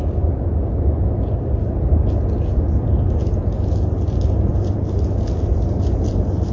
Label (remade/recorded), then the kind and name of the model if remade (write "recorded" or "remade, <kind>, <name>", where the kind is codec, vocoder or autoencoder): recorded